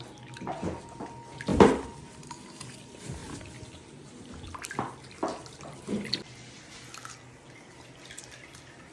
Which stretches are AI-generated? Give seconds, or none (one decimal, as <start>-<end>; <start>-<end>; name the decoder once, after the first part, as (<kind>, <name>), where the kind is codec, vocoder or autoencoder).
none